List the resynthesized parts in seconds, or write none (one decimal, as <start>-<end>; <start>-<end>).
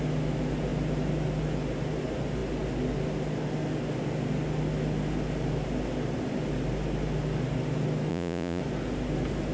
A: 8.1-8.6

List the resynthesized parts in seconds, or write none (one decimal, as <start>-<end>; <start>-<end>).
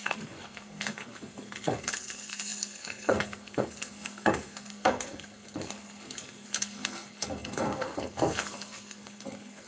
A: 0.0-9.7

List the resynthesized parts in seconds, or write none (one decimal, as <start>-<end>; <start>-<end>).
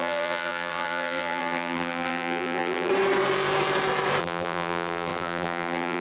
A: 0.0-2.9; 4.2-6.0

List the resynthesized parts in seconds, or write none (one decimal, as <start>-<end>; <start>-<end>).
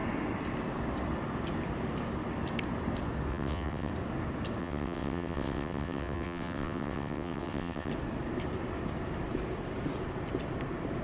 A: 3.3-3.9; 4.6-7.9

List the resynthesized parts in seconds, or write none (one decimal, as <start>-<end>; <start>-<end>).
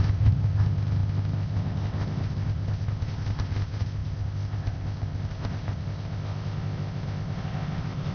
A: 0.0-8.1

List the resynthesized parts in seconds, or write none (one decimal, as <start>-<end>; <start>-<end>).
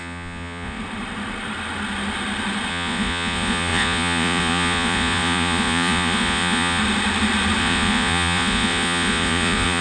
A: 0.0-0.8; 2.7-6.8; 7.6-9.8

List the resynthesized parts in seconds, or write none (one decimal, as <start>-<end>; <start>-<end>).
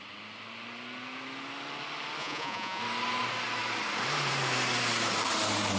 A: 2.2-2.8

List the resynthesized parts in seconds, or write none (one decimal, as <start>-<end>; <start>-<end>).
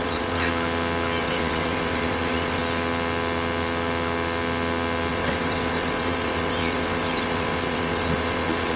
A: 0.0-0.5; 1.2-2.6; 5.1-8.8